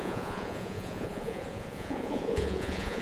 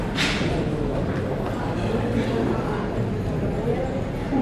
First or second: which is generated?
first